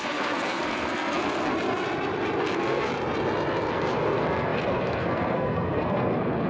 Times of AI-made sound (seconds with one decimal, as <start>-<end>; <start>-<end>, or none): 0.0-1.5; 2.4-2.9; 3.7-6.5

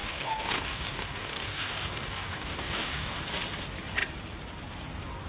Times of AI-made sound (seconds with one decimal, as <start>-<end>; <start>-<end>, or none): 0.0-3.2